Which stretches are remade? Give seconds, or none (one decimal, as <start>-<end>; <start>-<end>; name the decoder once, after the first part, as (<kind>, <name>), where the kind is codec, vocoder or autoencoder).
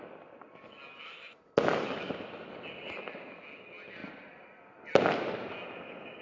none